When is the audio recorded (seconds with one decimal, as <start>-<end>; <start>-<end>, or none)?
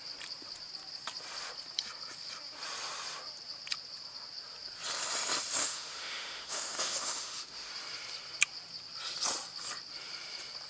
0.0-5.6; 7.7-10.7